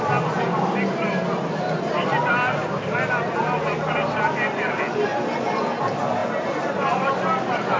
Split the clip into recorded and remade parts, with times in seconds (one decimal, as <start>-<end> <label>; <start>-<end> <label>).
0.0-7.8 recorded